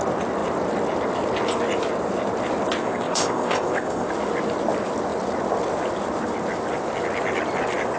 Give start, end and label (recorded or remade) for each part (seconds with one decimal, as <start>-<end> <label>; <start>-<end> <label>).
0.0-2.8 recorded; 2.8-4.1 remade; 4.1-8.0 recorded

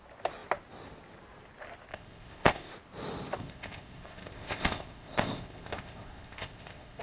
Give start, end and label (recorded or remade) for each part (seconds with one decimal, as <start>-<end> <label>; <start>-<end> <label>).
0.0-1.9 recorded; 1.9-2.7 remade; 2.7-3.4 recorded; 3.4-7.0 remade

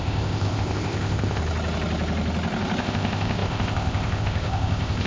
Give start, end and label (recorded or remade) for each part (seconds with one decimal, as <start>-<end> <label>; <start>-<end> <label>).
0.0-1.4 remade; 1.4-2.8 recorded; 2.8-5.1 remade

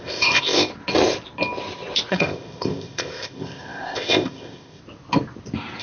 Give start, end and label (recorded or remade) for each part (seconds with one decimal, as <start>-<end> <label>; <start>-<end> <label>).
0.0-0.7 remade; 0.7-2.1 recorded; 2.1-4.8 remade; 4.8-5.8 recorded

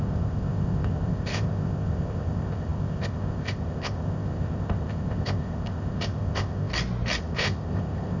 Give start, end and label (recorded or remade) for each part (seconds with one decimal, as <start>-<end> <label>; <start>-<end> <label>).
0.0-6.7 remade; 6.7-7.2 recorded; 7.2-8.2 remade

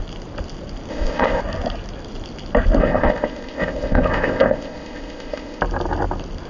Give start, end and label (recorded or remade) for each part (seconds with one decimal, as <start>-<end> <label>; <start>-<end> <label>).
0.0-0.9 recorded; 0.9-1.4 remade; 1.4-2.8 recorded; 2.8-5.6 remade; 5.6-6.5 recorded

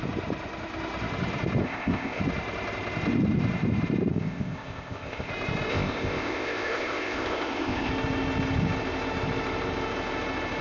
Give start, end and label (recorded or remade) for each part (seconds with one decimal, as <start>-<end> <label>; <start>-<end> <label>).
0.0-1.6 recorded; 1.6-2.2 remade; 2.2-4.1 recorded; 4.1-5.3 remade; 5.3-5.7 recorded; 5.7-7.9 remade; 7.9-10.6 recorded

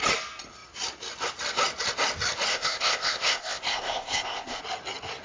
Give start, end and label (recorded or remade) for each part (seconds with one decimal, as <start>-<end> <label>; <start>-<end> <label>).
0.0-2.5 recorded; 2.5-4.6 remade; 4.6-5.2 recorded